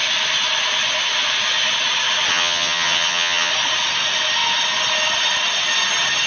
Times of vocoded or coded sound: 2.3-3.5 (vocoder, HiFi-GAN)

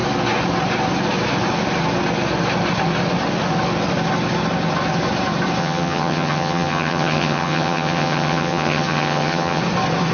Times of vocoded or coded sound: 5.6-9.6 (vocoder, HiFi-GAN)

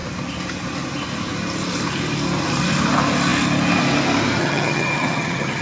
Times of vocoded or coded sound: 4.4-5.6 (vocoder, HiFi-GAN)

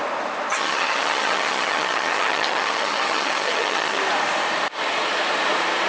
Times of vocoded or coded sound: 0.5-4.0 (vocoder, HiFi-GAN)

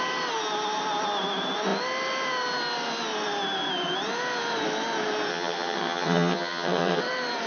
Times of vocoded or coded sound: 5.3-7.0 (vocoder, HiFi-GAN)

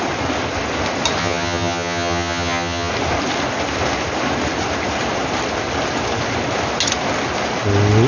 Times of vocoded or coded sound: 1.2-2.9 (vocoder, HiFi-GAN)

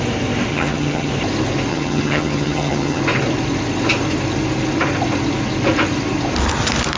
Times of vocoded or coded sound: 0.5-1.1 (vocoder, HiFi-GAN); 1.7-3.0

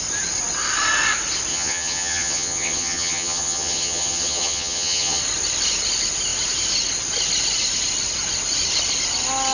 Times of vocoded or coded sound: 1.5-5.2 (vocoder, HiFi-GAN)